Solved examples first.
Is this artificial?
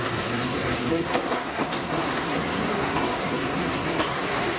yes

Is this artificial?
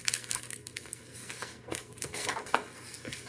yes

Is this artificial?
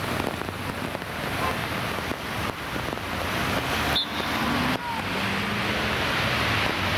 no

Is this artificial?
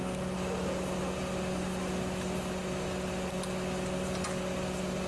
no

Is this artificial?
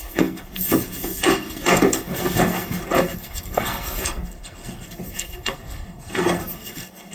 yes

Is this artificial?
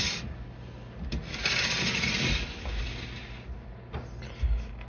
no